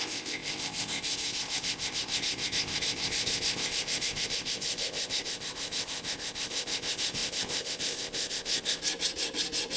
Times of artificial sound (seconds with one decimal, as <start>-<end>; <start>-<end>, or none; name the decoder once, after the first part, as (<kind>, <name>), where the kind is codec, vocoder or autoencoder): 0.0-8.8 (codec, ZipCodec)